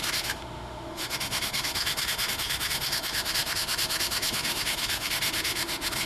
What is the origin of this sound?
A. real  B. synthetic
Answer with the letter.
B